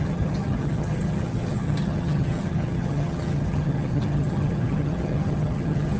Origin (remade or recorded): remade